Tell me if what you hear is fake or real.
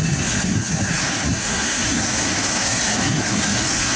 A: fake